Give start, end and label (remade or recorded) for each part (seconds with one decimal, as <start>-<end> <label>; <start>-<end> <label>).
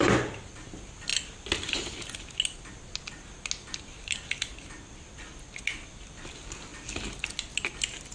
0.0-8.1 recorded